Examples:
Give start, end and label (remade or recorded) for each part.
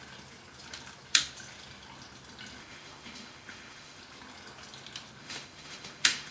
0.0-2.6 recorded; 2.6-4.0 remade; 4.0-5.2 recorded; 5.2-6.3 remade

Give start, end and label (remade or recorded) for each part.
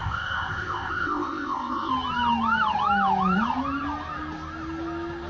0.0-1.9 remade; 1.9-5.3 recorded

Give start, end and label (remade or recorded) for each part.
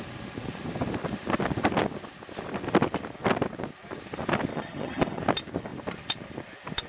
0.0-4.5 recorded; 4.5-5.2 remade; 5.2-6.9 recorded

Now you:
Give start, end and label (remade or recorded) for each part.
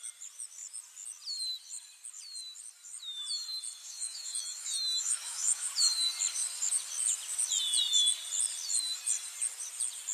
0.0-3.8 recorded; 3.8-5.7 remade; 5.7-10.1 recorded